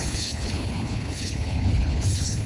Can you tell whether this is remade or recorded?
remade